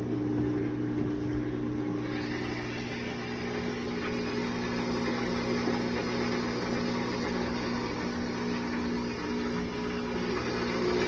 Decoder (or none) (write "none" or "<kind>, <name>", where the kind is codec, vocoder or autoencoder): none